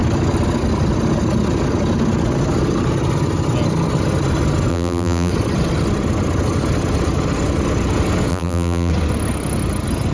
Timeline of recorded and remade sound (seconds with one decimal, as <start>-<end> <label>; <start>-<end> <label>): 0.0-4.7 recorded; 4.7-5.3 remade; 5.3-8.3 recorded; 8.3-8.9 remade; 8.9-10.1 recorded